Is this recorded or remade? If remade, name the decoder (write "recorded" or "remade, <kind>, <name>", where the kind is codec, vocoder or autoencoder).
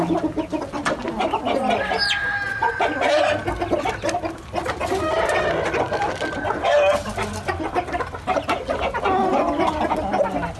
recorded